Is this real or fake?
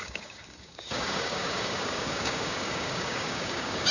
fake